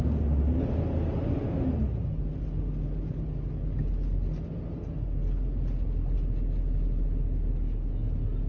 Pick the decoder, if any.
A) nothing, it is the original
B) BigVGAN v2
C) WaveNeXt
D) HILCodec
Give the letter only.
A